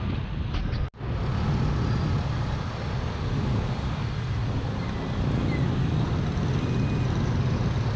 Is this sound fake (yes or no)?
no